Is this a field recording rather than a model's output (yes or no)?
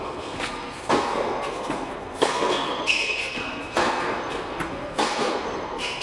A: no